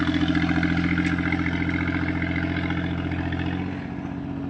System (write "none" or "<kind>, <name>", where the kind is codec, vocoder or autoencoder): none